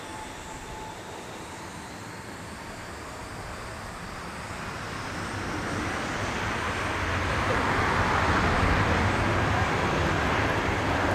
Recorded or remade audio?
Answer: recorded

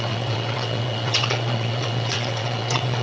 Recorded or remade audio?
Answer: remade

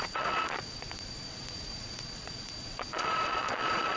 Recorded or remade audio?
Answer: remade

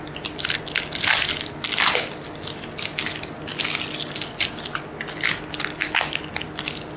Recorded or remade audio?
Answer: recorded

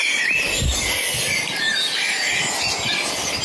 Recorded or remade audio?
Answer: recorded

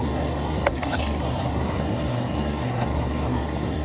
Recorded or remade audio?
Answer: remade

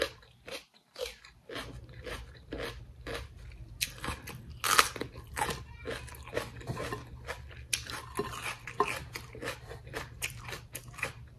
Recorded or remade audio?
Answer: recorded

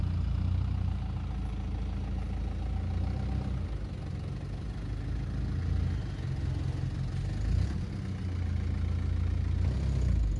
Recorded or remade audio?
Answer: recorded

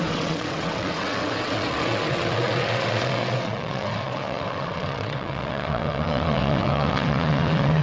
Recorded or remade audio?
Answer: remade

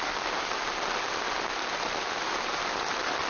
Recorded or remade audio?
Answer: recorded